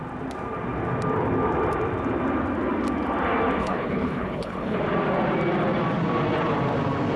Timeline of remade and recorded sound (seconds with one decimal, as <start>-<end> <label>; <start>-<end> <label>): 0.0-3.6 recorded; 3.6-4.8 remade; 4.8-7.2 recorded